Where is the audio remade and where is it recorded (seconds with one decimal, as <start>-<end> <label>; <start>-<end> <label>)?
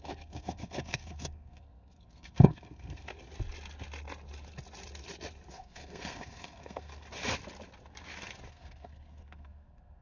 0.0-3.1 remade; 3.1-5.5 recorded; 5.5-6.9 remade; 6.9-8.5 recorded; 8.5-10.0 remade